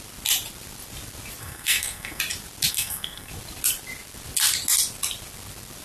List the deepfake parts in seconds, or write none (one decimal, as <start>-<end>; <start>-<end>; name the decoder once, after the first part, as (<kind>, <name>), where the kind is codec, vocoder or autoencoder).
1.4-2.2 (codec, SNAC); 2.7-3.3